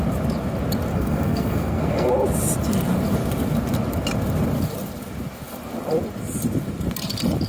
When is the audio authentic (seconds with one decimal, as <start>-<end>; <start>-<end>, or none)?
0.0-0.9; 2.1-7.5